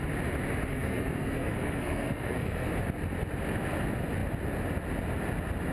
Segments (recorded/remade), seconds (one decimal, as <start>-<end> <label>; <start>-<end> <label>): 0.0-0.7 recorded; 0.7-2.7 remade; 2.7-5.7 recorded

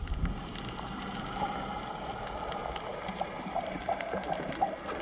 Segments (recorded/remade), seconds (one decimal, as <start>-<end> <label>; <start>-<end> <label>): 0.0-2.9 recorded; 2.9-3.9 remade; 3.9-5.0 recorded